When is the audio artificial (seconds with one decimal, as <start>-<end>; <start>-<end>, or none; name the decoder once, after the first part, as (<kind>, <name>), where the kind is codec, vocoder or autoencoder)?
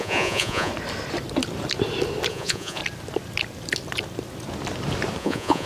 0.0-0.7 (vocoder, Vocos); 2.3-2.8; 5.2-5.7